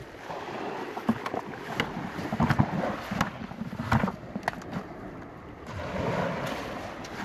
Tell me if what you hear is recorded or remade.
recorded